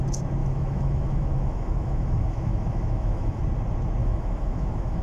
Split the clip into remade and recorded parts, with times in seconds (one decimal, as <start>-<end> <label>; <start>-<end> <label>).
0.0-0.4 recorded; 0.4-3.4 remade; 3.4-4.0 recorded; 4.0-5.0 remade